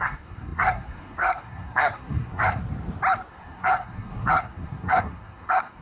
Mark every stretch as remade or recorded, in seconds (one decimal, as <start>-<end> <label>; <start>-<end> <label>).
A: 0.0-2.6 remade; 2.6-3.3 recorded; 3.3-5.8 remade